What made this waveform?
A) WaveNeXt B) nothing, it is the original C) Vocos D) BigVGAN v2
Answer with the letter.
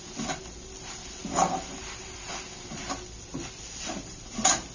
B